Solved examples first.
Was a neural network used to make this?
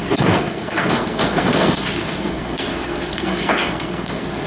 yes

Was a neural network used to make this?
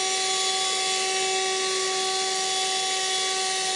no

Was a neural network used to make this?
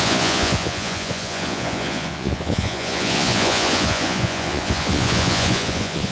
yes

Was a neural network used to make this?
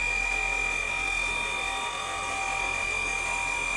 no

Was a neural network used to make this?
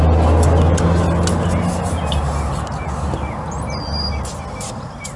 no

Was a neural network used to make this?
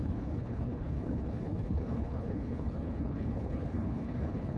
yes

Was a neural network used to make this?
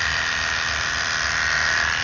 no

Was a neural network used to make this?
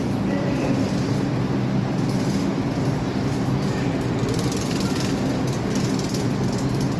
no